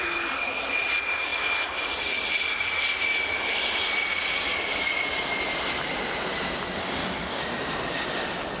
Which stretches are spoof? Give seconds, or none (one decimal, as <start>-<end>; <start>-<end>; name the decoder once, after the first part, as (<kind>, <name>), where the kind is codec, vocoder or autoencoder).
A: 6.8-7.4 (codec, DAC)